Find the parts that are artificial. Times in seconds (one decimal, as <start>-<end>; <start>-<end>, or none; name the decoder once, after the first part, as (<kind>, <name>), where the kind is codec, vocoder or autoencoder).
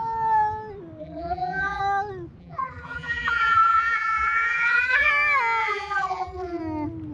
1.0-1.8 (vocoder, BigVGAN v2); 2.4-5.1; 5.6-6.6